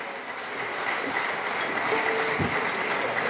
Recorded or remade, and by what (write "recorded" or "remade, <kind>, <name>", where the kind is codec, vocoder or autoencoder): recorded